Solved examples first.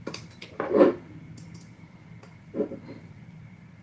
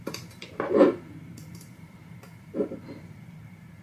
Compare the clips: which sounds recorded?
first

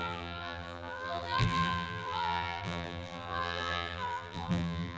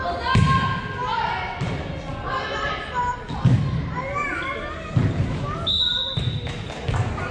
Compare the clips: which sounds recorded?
second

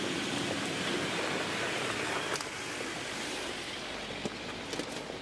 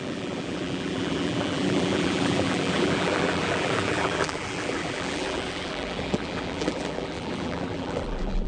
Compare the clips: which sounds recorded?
first